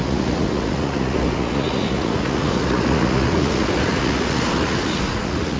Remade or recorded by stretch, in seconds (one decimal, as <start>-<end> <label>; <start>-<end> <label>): 0.0-5.6 remade